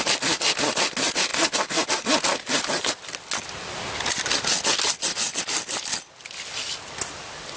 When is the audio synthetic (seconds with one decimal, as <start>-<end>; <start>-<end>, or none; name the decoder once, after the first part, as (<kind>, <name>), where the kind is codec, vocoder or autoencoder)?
none